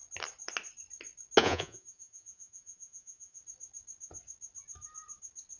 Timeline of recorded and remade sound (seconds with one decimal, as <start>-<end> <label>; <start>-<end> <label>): 0.0-1.4 recorded; 1.4-3.4 remade; 3.4-5.6 recorded